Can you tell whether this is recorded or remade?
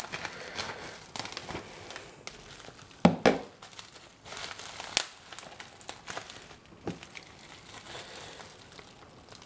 recorded